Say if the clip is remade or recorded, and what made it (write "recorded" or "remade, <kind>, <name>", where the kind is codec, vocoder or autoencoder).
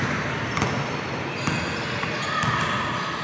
recorded